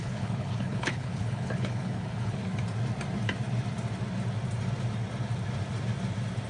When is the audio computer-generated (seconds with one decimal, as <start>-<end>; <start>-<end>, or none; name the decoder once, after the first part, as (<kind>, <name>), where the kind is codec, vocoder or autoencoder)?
0.0-2.4 (codec, HILCodec)

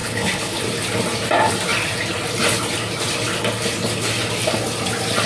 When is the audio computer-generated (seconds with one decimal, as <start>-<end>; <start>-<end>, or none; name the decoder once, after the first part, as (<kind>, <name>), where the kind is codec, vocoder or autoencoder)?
0.0-0.6 (codec, HILCodec)

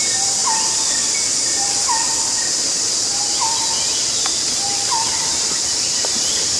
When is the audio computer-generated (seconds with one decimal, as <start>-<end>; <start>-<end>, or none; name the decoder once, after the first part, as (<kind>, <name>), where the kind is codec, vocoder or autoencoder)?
none

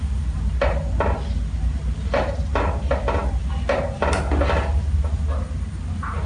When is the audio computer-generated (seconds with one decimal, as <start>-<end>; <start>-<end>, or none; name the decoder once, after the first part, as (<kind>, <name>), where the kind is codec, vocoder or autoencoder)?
none

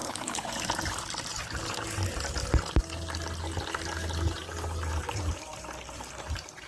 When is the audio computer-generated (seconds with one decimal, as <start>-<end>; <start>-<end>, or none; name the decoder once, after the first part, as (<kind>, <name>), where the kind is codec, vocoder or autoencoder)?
0.0-0.5 (codec, HILCodec)

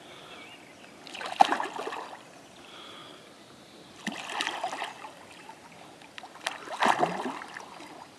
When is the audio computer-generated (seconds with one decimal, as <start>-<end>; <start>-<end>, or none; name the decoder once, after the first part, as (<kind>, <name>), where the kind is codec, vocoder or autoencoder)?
none